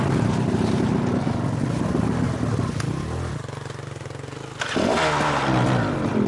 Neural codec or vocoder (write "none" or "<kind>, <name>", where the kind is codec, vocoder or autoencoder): none